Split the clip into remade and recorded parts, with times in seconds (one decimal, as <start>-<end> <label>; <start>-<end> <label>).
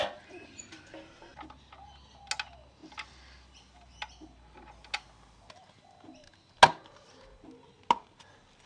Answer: 0.0-8.7 recorded